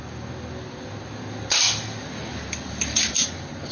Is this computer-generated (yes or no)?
no